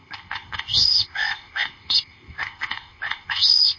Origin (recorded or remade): remade